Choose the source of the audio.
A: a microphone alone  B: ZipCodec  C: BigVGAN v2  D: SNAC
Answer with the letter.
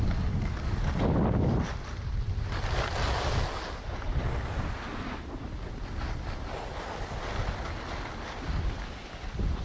A